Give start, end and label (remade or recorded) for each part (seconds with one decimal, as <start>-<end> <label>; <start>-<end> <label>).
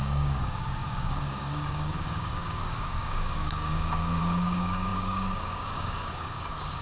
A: 0.0-6.8 remade